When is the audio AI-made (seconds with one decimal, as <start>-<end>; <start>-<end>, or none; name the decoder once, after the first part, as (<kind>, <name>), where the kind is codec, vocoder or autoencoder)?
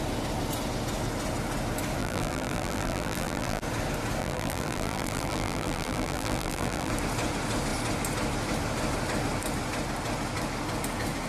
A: 2.0-3.6 (vocoder, BigVGAN v2); 4.2-6.9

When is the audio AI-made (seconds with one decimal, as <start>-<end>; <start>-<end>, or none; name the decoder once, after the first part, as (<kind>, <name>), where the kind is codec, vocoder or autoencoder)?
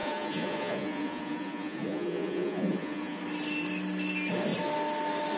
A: 0.0-3.2 (vocoder, Vocos)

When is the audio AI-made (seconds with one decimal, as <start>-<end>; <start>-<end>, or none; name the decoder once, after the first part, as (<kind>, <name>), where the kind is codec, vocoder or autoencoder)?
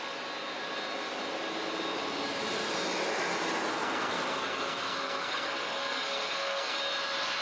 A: 3.7-6.8 (codec, SNAC)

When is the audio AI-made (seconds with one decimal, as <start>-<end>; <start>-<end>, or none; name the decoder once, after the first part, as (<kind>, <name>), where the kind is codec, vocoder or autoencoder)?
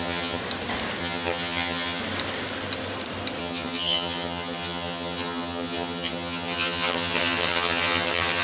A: 0.0-0.4 (vocoder, HiFi-GAN); 1.0-2.0; 3.4-8.4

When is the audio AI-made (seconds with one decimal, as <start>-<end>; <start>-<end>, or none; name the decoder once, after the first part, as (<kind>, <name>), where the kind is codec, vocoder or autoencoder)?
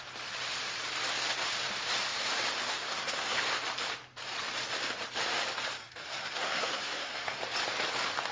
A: 2.7-3.4 (codec, SNAC); 5.8-7.4